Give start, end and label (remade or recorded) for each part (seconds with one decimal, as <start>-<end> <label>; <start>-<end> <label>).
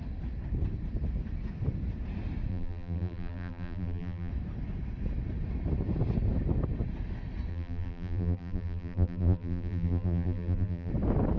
0.0-2.5 recorded; 2.5-4.3 remade; 4.3-7.5 recorded; 7.5-10.9 remade; 10.9-11.4 recorded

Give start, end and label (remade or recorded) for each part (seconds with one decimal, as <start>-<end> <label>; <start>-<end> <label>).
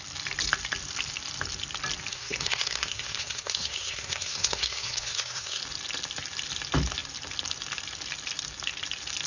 0.0-2.1 recorded; 2.1-5.6 remade; 5.6-9.3 recorded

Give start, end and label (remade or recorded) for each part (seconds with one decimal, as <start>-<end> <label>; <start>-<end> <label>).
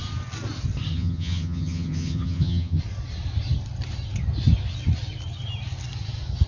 0.0-0.9 recorded; 0.9-2.8 remade; 2.8-6.5 recorded